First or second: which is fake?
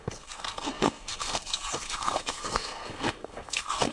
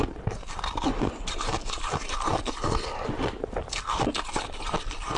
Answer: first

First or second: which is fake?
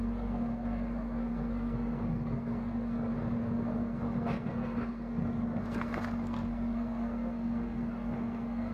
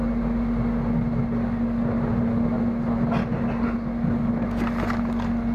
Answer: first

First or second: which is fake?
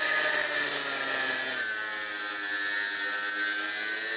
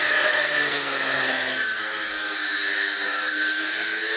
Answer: second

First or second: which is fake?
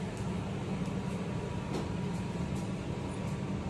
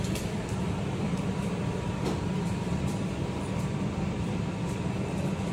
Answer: second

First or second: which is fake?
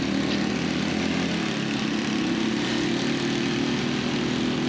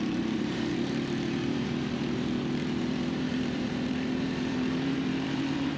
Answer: second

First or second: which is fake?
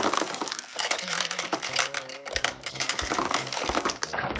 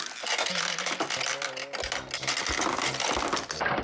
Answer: first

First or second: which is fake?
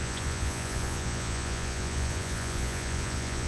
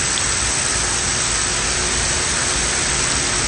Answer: first